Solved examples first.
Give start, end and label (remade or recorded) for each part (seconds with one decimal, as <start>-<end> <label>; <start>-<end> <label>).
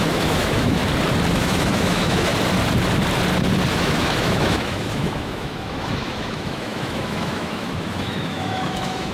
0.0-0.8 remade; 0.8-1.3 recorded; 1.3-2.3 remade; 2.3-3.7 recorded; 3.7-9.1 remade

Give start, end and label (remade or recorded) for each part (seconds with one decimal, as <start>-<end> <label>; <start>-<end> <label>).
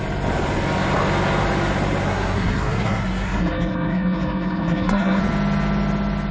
0.0-2.1 recorded; 2.1-5.2 remade; 5.2-6.3 recorded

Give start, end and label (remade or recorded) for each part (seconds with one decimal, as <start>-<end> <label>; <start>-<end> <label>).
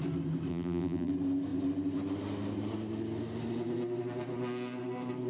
0.0-0.5 recorded; 0.5-1.1 remade; 1.1-5.3 recorded